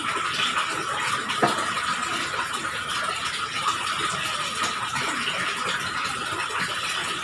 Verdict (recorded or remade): recorded